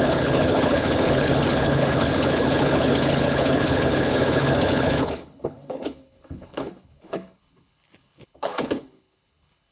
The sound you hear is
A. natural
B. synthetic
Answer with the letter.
B